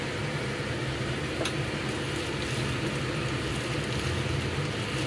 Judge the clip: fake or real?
real